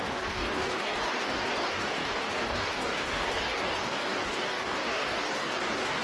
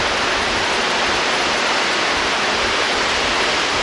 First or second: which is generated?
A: first